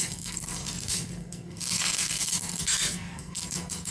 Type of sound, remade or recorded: remade